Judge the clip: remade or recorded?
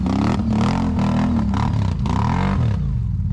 recorded